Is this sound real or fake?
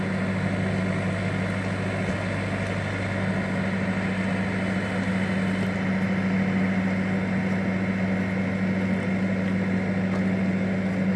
real